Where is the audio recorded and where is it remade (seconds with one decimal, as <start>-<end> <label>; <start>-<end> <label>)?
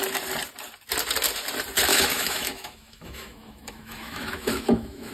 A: 0.0-1.9 recorded; 1.9-5.1 remade